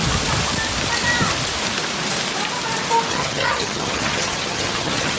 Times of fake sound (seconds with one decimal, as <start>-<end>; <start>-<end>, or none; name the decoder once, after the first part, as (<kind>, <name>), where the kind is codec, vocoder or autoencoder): 3.1-5.2 (vocoder, HiFi-GAN)